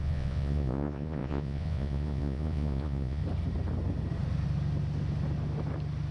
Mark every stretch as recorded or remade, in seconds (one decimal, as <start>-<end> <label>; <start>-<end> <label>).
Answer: 0.0-3.2 remade; 3.2-6.1 recorded